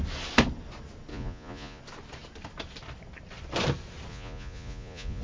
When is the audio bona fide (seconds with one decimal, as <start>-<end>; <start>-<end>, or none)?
0.0-1.1; 1.8-4.1

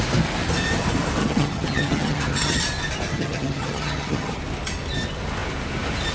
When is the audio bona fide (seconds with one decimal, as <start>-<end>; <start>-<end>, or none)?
0.0-1.2; 2.6-3.1; 4.4-6.1

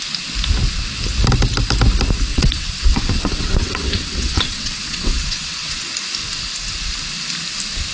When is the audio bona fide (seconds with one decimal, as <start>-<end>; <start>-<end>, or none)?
0.0-2.3; 5.8-7.9

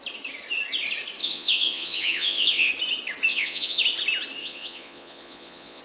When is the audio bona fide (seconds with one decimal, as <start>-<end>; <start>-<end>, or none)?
0.0-1.2; 2.7-3.3; 3.8-4.4

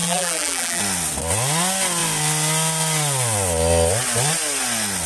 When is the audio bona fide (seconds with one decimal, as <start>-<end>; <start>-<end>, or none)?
0.8-5.1

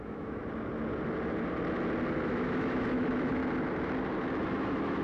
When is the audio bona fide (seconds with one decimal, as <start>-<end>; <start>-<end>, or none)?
0.4-2.2; 3.4-4.5

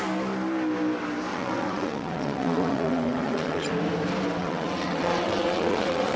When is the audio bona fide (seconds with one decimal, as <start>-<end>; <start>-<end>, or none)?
0.0-1.3; 3.7-4.4

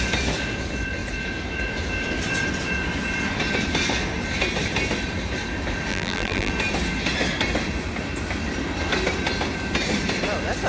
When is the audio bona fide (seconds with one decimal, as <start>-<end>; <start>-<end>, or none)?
0.0-5.9; 6.5-10.7